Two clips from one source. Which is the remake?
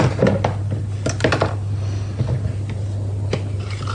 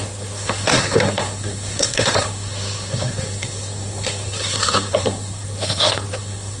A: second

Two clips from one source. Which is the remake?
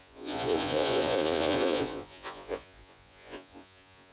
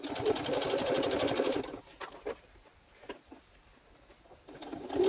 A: first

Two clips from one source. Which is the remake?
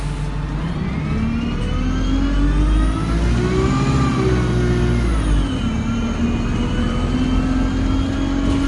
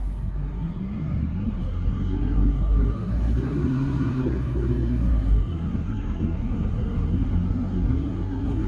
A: second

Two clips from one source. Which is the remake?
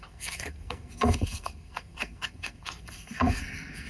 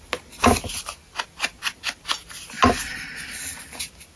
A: first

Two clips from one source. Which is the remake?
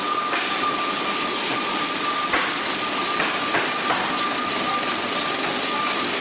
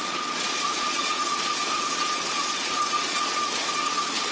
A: second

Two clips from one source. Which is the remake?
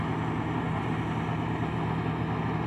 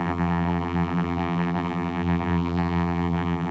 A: second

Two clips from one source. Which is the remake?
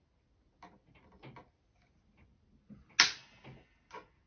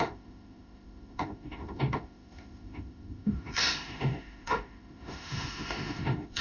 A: second